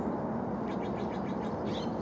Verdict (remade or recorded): recorded